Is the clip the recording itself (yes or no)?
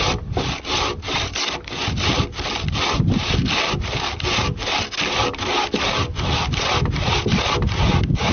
yes